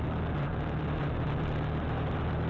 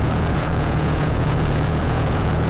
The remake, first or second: second